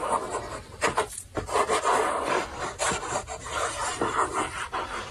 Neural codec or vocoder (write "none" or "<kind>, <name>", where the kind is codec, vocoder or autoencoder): vocoder, BigVGAN v2